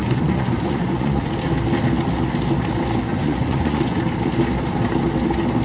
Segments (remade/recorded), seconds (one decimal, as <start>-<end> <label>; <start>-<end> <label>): 0.0-1.3 remade; 1.3-3.1 recorded; 3.1-4.0 remade; 4.0-5.6 recorded